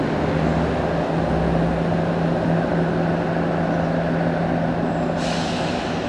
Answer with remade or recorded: recorded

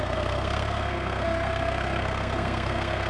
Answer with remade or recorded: remade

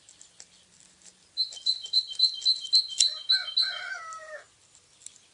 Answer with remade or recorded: recorded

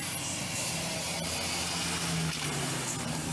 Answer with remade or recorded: recorded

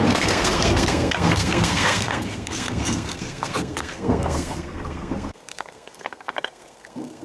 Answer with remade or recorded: remade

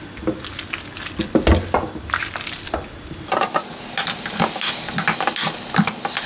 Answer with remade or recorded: recorded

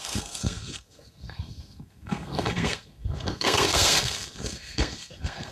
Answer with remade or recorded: remade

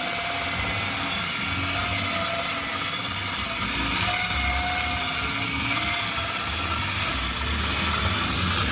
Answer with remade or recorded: recorded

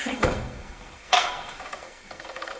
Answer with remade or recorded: remade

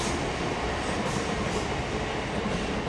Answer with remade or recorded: recorded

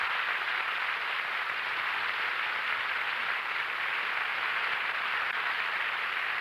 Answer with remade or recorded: recorded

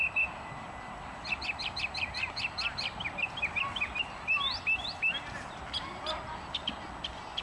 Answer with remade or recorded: recorded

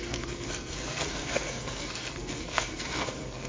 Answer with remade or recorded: remade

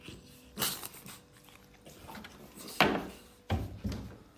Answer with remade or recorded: recorded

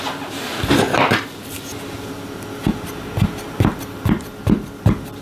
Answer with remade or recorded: recorded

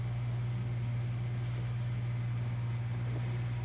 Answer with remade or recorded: recorded